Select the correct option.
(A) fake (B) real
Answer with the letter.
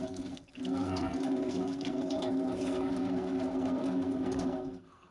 A